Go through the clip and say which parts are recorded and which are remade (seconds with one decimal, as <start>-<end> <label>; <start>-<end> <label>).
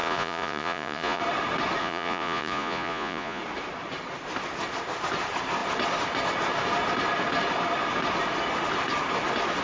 0.0-1.2 remade; 1.2-1.8 recorded; 1.8-3.4 remade; 3.4-9.6 recorded